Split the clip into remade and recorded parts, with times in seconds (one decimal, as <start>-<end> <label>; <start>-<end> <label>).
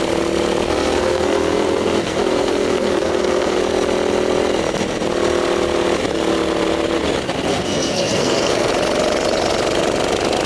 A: 0.0-0.6 recorded; 0.6-3.6 remade; 3.6-7.5 recorded; 7.5-8.7 remade; 8.7-10.5 recorded